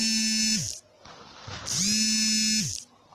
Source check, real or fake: real